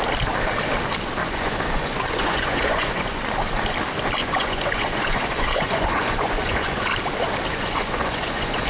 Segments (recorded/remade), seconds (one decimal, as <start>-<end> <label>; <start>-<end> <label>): 0.0-1.2 recorded; 1.2-3.2 remade; 3.2-4.2 recorded; 4.2-6.9 remade; 6.9-7.5 recorded; 7.5-8.7 remade